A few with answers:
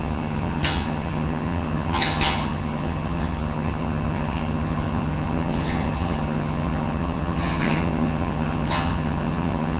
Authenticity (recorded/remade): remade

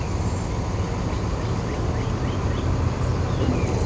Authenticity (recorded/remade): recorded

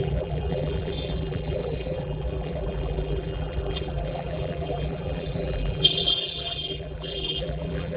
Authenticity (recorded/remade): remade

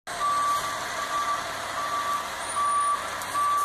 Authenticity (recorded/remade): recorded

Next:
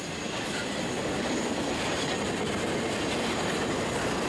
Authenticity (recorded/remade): recorded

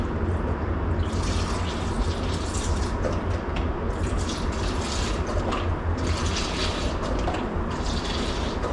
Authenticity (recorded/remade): recorded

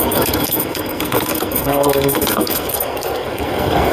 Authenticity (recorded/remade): remade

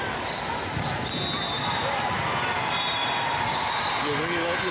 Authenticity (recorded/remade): recorded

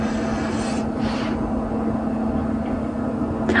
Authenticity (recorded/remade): recorded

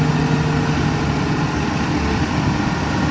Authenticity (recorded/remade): recorded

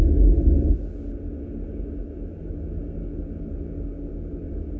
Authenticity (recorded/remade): recorded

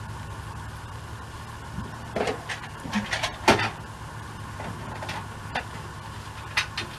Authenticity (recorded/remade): recorded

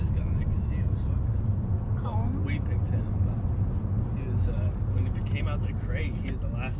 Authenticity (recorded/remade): recorded